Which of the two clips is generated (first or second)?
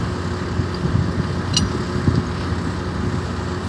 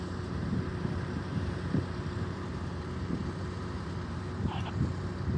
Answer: second